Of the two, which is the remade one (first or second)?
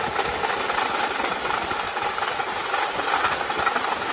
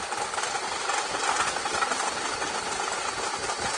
first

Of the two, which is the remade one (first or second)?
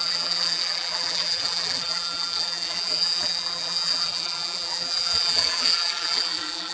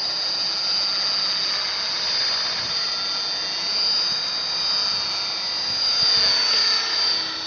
first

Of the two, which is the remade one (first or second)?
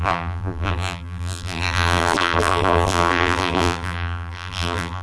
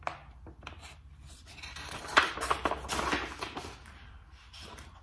first